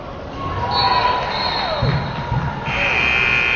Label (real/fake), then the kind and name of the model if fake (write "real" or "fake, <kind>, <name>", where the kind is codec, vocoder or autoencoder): real